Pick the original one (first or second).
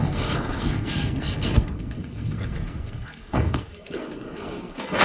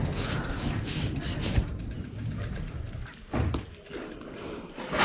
second